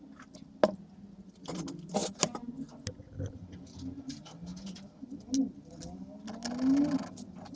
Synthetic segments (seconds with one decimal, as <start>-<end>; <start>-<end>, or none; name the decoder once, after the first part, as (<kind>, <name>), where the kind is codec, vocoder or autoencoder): none

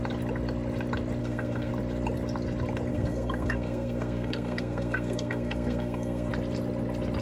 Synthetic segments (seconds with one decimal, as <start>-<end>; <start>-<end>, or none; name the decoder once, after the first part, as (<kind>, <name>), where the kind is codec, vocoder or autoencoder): 1.2-1.7 (codec, SNAC); 2.9-6.3